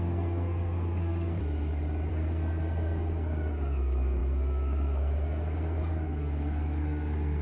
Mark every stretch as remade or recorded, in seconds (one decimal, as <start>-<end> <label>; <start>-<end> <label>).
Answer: 0.0-1.4 remade; 1.4-2.1 recorded; 2.1-7.4 remade